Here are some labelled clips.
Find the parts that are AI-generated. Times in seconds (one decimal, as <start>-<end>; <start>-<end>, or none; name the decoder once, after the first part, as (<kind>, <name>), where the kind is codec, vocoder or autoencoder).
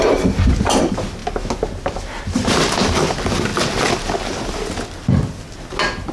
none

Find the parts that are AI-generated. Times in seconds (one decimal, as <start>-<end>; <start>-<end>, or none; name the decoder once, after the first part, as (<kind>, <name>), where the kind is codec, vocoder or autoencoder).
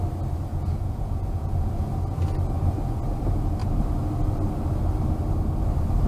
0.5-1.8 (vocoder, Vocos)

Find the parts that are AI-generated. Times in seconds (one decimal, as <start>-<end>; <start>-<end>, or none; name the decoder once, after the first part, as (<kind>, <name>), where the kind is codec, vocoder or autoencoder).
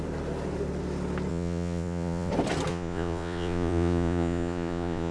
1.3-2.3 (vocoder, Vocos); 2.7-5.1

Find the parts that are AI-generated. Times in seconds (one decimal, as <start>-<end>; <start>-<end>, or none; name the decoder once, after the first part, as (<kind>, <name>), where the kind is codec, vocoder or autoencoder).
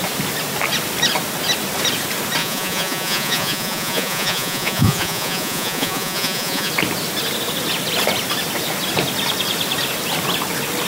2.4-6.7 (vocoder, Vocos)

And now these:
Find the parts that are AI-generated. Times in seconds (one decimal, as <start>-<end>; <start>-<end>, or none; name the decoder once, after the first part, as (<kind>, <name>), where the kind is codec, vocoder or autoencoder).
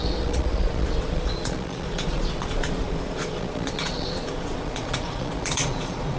0.0-6.2 (vocoder, Vocos)